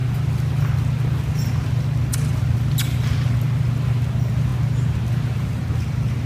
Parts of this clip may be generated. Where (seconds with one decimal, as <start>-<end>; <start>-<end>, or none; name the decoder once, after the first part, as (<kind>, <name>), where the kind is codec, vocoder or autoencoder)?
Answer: none